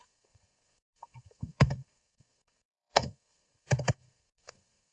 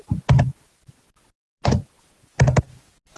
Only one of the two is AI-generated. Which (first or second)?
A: first